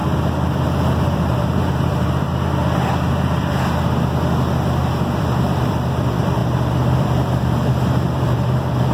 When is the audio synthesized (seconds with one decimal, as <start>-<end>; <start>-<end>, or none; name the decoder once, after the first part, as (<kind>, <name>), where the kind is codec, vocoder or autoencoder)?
1.0-2.3 (vocoder, BigVGAN v2); 4.9-8.9